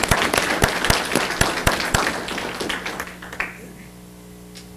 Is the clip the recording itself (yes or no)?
yes